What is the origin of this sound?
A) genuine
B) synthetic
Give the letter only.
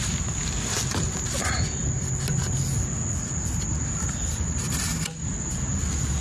A